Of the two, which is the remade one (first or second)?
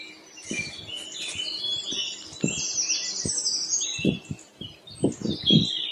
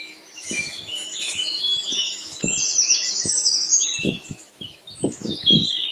second